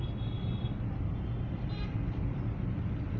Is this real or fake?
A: real